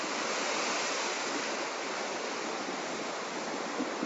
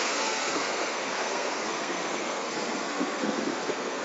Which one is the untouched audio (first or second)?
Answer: first